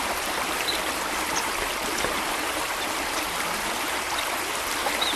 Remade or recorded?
recorded